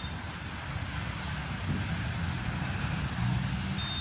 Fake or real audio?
real